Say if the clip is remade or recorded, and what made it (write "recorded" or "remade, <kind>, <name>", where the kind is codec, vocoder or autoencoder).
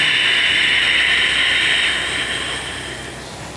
recorded